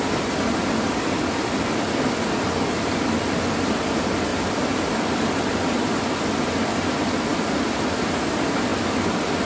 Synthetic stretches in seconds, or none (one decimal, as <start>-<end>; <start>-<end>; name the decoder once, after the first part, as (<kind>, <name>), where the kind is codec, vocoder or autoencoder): none